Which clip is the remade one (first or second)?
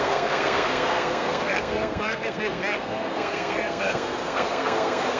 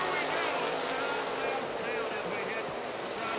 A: first